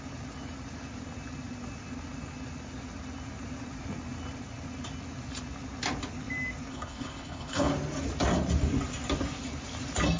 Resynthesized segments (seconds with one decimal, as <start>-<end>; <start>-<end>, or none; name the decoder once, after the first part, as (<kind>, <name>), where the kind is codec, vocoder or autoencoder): 6.7-7.7 (codec, HILCodec)